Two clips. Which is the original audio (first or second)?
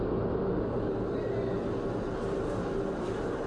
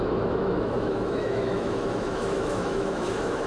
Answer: first